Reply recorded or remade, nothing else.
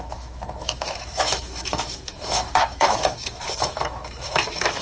remade